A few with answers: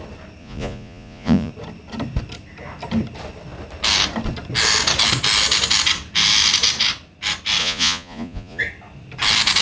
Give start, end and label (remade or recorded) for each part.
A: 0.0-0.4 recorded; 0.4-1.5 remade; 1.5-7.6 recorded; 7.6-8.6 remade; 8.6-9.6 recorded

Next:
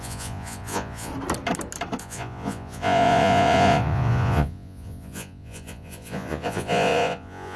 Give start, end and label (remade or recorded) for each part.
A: 0.0-1.1 remade; 1.1-2.0 recorded; 2.0-7.6 remade